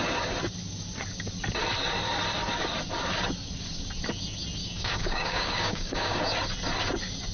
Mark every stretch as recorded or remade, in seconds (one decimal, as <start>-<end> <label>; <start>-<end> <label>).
0.0-4.6 recorded; 4.6-6.2 remade; 6.2-7.3 recorded